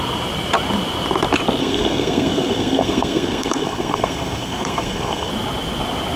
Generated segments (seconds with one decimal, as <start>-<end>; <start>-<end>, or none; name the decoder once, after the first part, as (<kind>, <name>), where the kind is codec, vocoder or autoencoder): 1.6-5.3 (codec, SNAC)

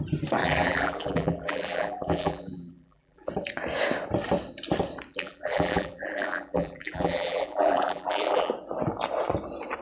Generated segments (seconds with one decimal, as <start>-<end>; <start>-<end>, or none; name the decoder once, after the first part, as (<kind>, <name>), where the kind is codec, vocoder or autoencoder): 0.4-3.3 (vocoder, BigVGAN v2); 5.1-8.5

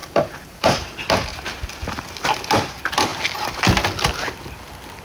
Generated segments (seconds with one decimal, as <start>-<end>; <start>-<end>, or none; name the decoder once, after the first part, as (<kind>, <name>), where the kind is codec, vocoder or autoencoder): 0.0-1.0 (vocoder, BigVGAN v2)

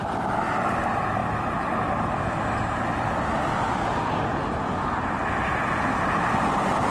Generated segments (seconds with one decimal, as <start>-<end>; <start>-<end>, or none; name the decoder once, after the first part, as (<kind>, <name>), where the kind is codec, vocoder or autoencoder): none